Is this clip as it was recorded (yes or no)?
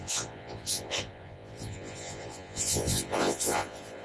no